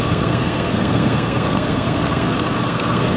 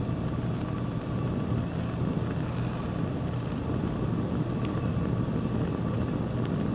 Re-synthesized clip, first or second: first